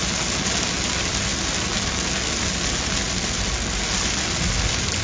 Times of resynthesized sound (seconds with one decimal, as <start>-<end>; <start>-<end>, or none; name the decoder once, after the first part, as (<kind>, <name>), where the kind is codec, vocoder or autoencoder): none